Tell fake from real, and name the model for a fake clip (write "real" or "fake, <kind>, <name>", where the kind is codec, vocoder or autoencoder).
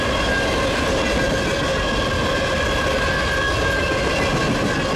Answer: real